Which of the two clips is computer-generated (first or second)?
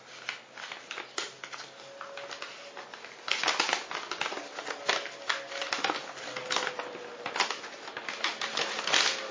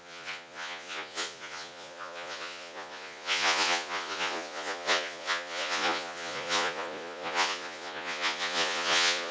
second